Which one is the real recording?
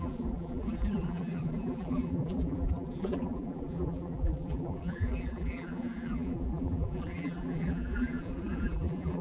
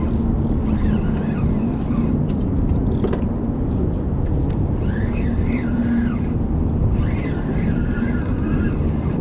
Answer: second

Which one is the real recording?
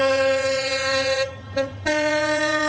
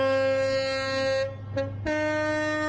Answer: second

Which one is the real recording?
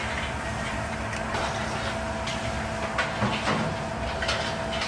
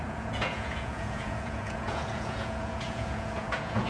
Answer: first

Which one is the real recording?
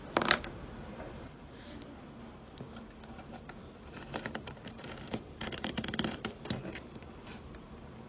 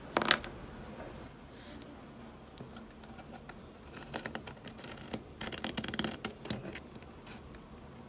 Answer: second